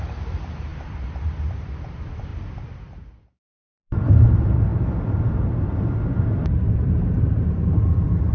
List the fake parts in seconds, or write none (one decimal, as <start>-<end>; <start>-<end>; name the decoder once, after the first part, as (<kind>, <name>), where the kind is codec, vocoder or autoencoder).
0.0-4.7 (vocoder, BigVGAN v2); 6.7-8.3